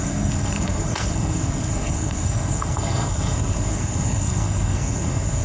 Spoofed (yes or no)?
yes